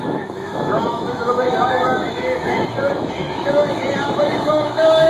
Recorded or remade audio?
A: remade